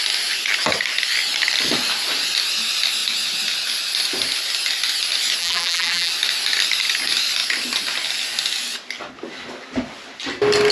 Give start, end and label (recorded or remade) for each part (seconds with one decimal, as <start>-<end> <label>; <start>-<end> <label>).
0.0-5.4 recorded; 5.4-6.1 remade; 6.1-10.7 recorded